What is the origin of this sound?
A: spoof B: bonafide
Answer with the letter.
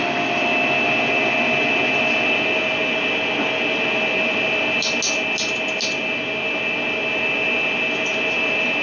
B